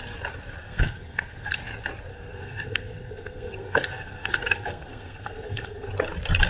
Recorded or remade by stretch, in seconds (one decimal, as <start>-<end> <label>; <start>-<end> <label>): 0.0-0.6 recorded; 0.6-1.6 remade; 1.6-2.1 recorded; 2.1-5.9 remade; 5.9-6.5 recorded

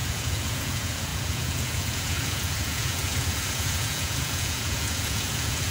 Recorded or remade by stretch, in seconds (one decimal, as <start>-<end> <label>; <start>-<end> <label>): 0.0-5.7 remade

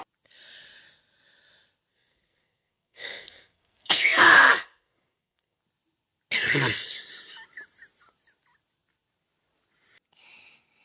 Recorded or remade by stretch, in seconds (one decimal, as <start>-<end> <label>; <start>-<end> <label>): 0.0-1.9 recorded; 1.9-5.6 remade; 5.6-10.8 recorded

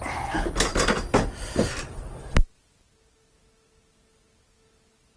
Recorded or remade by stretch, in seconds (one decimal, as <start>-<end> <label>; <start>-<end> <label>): 0.0-5.2 recorded

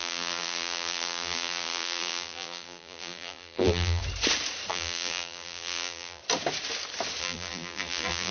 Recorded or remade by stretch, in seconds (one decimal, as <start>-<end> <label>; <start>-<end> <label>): 0.0-4.0 remade; 4.0-4.7 recorded; 4.7-6.2 remade; 6.2-7.2 recorded; 7.2-8.3 remade

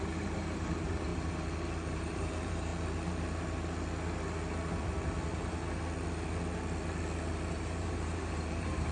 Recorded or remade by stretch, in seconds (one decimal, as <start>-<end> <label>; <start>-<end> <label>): 0.0-1.1 remade; 1.1-1.9 recorded; 1.9-2.7 remade; 2.7-7.5 recorded; 7.5-8.9 remade